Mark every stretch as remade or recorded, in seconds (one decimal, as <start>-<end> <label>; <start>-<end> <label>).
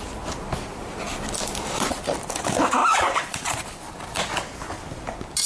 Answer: 0.0-0.7 recorded; 0.7-2.4 remade; 2.4-2.8 recorded; 2.8-4.3 remade; 4.3-5.5 recorded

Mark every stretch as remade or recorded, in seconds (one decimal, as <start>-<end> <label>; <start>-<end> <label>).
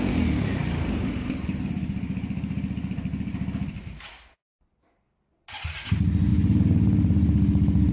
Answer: 0.0-0.6 recorded; 0.6-1.6 remade; 1.6-7.9 recorded